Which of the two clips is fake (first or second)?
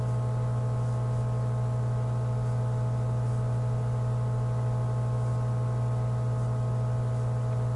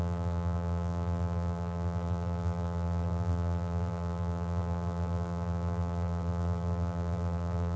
second